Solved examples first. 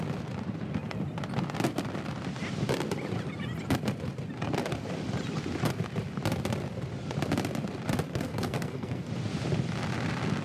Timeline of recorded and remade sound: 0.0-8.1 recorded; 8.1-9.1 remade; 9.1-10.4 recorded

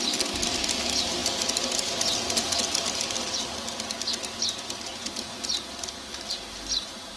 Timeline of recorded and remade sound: 0.0-7.2 recorded

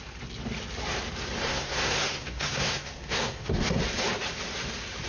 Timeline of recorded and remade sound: 0.0-1.4 recorded; 1.4-3.8 remade; 3.8-5.1 recorded

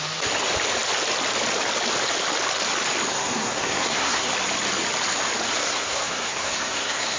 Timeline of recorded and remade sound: 0.0-3.1 recorded; 3.1-4.3 remade; 4.3-5.6 recorded; 5.6-7.2 remade

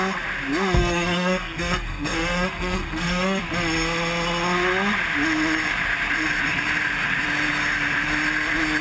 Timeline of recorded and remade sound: 0.0-0.8 recorded; 0.8-3.4 remade; 3.4-8.8 recorded

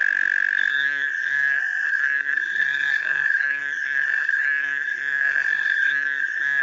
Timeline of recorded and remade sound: 0.0-0.7 recorded; 0.7-6.6 remade

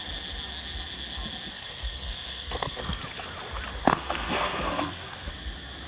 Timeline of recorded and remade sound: 0.0-1.5 recorded; 1.5-3.0 remade; 3.0-3.8 recorded; 3.8-5.3 remade; 5.3-5.9 recorded

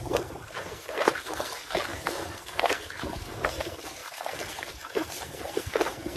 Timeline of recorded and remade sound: 0.0-6.2 remade